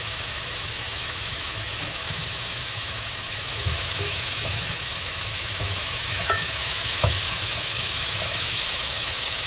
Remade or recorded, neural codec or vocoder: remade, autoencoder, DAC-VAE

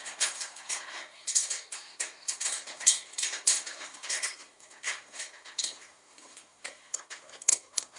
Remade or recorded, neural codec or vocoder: remade, codec, SNAC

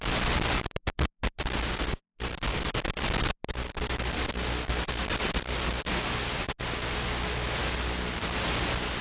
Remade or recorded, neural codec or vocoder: recorded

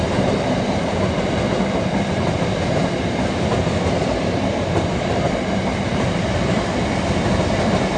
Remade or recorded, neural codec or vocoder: recorded